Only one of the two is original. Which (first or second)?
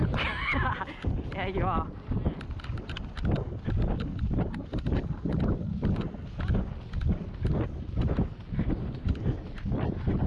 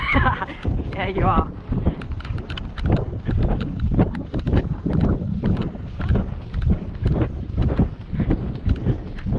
first